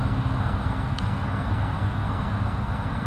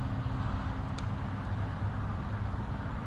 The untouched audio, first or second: second